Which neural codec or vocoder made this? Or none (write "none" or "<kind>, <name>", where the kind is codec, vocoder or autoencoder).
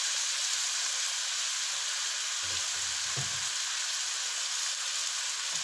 none